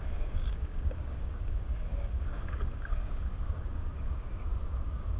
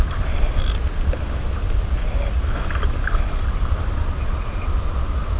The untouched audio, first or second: second